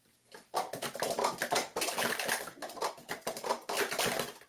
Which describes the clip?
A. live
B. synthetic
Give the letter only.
A